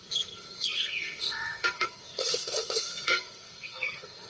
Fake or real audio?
fake